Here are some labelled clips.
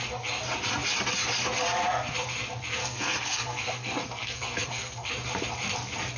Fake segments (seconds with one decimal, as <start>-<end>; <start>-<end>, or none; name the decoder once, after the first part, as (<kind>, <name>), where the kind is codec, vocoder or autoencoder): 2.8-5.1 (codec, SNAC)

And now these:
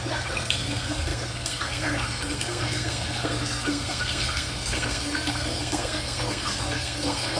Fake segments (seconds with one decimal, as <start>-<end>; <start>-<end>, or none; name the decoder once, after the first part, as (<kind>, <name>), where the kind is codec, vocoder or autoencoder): 0.0-7.4 (codec, SNAC)

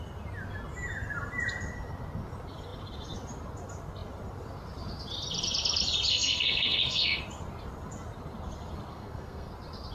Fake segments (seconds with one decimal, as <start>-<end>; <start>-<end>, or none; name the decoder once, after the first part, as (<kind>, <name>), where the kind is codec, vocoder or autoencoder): 6.1-7.2 (codec, SNAC); 8.9-9.5

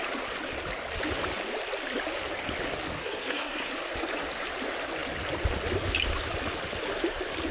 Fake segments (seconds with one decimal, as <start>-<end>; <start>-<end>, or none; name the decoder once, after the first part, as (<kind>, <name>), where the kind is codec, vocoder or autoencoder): 3.0-3.7 (codec, SNAC)

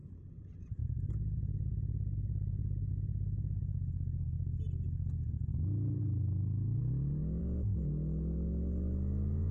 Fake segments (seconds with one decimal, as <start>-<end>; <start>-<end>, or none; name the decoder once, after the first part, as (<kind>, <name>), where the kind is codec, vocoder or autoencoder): none

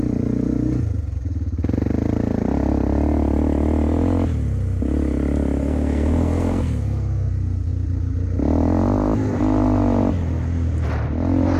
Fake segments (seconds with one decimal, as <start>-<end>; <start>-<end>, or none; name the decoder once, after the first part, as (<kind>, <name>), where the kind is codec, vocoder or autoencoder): 5.6-7.3 (codec, SNAC)

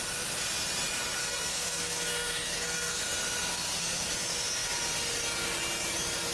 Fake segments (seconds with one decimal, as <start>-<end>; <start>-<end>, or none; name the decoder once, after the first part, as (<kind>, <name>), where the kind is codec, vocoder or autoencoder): 1.2-3.0 (codec, SNAC); 3.5-4.1

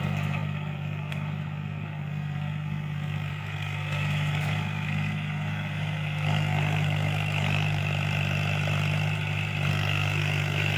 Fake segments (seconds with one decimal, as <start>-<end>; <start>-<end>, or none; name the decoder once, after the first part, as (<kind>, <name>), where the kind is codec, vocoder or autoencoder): 0.0-7.8 (codec, SNAC); 9.7-10.8